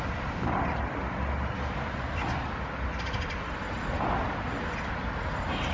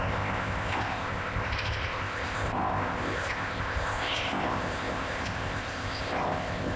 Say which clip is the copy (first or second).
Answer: second